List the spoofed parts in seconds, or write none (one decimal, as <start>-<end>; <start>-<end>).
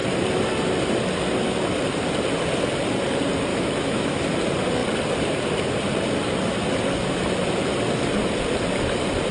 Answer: 3.5-4.2